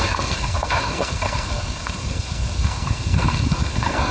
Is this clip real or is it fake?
fake